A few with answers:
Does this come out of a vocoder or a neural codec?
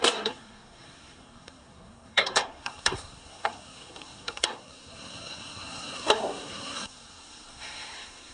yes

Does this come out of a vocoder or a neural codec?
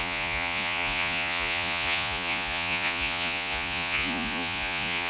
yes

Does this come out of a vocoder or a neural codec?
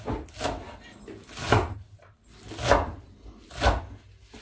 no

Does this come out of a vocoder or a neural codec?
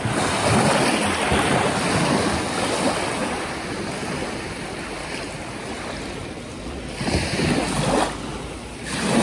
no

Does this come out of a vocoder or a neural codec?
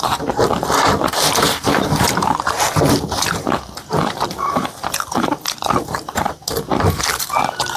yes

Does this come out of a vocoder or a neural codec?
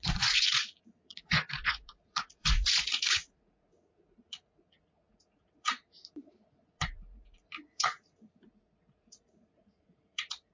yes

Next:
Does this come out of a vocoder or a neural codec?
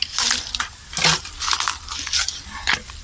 no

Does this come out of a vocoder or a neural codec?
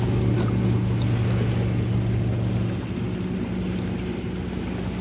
no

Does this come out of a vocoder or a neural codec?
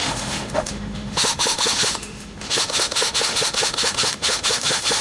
yes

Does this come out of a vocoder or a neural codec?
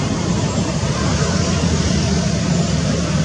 no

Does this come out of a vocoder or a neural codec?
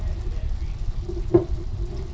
no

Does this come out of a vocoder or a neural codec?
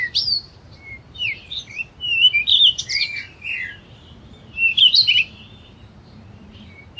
yes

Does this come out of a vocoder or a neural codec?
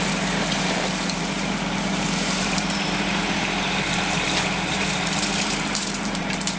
yes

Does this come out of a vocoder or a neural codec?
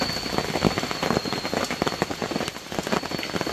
no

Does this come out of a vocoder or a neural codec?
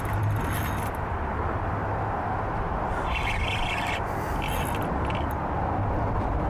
no